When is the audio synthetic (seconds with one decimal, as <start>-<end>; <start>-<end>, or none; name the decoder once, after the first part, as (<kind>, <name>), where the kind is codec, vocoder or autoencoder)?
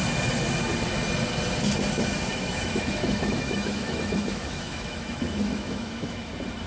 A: 2.3-6.3 (autoencoder, DAC-VAE)